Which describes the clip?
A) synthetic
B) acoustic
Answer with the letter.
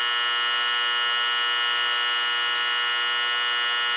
B